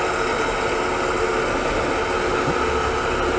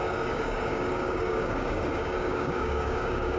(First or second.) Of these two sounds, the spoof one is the second